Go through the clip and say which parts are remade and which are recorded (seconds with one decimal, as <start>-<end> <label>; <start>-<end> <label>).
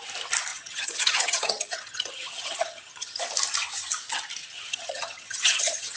0.0-0.5 recorded; 0.5-3.2 remade; 3.2-4.4 recorded; 4.4-6.0 remade